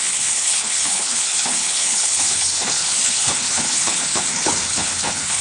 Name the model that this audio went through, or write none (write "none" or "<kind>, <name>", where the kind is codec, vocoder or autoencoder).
codec, HILCodec